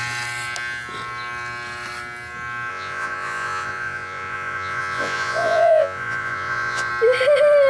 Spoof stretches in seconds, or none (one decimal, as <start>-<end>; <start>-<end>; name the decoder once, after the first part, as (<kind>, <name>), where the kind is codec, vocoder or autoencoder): 2.7-6.9 (vocoder, Vocos)